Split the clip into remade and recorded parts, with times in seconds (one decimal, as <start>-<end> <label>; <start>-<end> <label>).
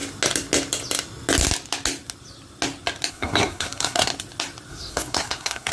0.0-3.1 recorded; 3.1-4.1 remade; 4.1-4.7 recorded; 4.7-5.7 remade